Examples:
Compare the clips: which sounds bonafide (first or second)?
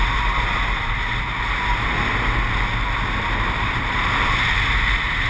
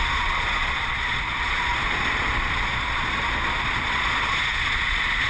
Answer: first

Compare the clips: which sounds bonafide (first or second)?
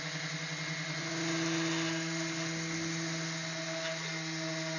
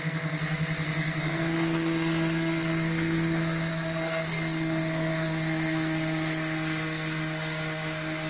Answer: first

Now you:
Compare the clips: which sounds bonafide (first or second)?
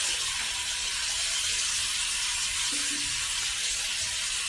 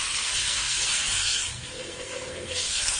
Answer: first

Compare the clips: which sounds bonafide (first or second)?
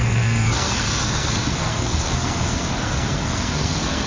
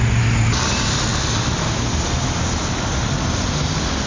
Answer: second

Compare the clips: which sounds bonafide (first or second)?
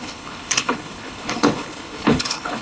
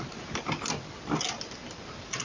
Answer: second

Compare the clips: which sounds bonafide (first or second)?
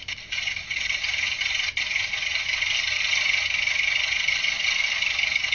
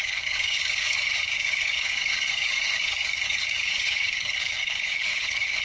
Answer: first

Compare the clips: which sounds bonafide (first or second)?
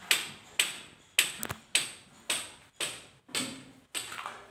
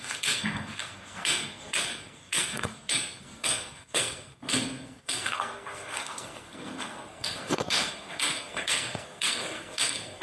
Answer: first